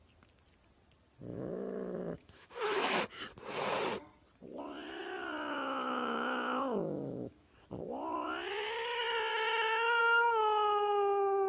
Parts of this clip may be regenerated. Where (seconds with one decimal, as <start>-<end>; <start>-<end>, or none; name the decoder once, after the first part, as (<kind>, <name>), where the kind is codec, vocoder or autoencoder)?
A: 1.3-3.0 (autoencoder, DAC-VAE); 5.4-7.7; 9.3-10.0